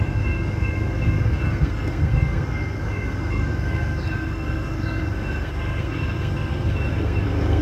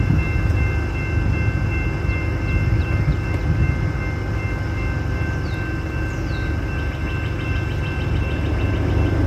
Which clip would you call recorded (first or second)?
second